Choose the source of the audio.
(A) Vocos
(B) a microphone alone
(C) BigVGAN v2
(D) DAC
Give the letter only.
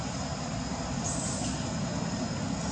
B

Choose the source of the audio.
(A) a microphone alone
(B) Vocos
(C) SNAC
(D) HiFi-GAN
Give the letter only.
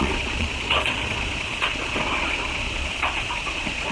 B